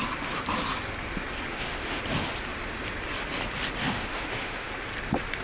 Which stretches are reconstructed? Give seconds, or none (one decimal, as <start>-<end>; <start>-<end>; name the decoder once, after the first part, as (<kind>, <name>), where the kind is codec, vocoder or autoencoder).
1.5-2.0 (autoencoder, DAC-VAE); 3.8-4.7